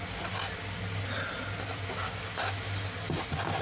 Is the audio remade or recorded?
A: recorded